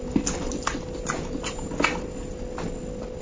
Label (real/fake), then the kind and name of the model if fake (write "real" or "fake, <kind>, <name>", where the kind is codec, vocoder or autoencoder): real